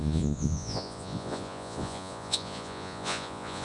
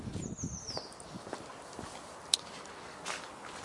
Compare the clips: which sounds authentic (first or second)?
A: second